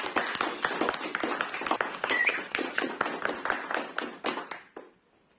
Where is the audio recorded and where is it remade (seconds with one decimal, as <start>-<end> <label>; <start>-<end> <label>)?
0.0-2.3 recorded; 2.3-2.9 remade; 2.9-5.4 recorded